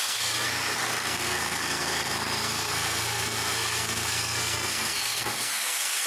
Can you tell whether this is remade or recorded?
remade